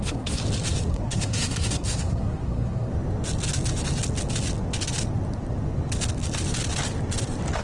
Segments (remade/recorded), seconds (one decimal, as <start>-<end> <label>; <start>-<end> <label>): 0.0-0.4 remade; 0.4-0.9 recorded; 0.9-2.9 remade; 2.9-7.6 recorded